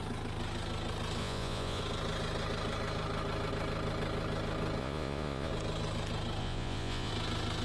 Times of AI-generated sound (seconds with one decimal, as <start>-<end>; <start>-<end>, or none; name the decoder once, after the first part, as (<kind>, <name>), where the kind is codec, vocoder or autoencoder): 1.2-1.8 (vocoder, Vocos); 4.8-5.5; 6.4-7.1